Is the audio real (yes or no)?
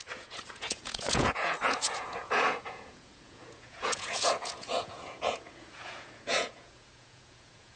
no